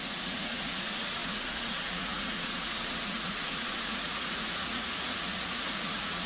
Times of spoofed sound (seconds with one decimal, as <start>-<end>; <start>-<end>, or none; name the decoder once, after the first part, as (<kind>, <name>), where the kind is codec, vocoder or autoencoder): 0.0-6.3 (vocoder, Vocos)

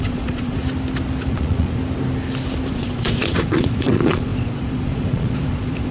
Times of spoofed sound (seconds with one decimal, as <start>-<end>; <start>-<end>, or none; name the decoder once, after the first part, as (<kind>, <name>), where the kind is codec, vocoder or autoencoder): 0.0-0.6 (vocoder, Vocos); 1.3-1.8; 2.7-5.9

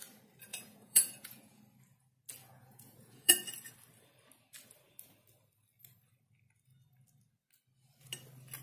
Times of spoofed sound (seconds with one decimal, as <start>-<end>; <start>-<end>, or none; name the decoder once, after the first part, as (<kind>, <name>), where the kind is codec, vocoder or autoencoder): 0.5-1.6 (vocoder, Vocos); 2.4-3.3